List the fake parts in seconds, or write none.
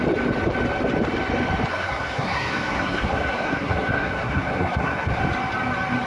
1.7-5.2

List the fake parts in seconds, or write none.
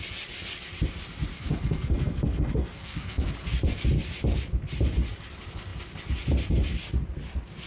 1.3-3.3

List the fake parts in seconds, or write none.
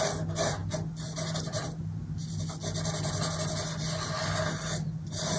none